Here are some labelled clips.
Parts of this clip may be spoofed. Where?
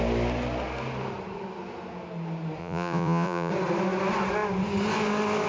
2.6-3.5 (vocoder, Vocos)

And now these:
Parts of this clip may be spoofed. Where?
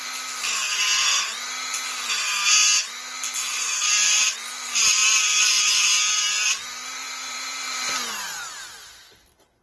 0.0-1.0 (vocoder, BigVGAN v2); 3.7-9.6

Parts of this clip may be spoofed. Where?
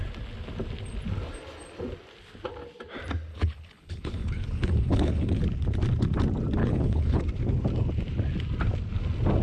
3.3-5.4 (codec, HILCodec); 6.6-7.2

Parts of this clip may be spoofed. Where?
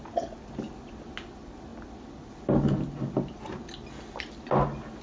none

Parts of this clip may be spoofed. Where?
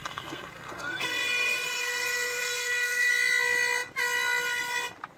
0.0-3.1 (codec, SNAC)